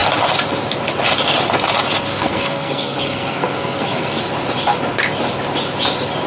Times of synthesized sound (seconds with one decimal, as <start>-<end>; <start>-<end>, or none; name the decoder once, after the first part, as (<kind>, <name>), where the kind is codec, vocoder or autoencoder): 2.1-4.2 (codec, SNAC)